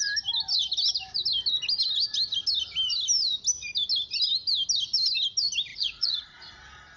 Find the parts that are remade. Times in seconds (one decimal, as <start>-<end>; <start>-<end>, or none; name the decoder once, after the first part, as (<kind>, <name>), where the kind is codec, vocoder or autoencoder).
5.7-6.5 (vocoder, Vocos)